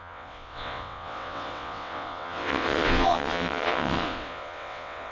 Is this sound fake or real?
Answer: fake